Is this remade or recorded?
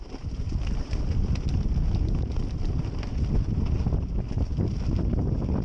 recorded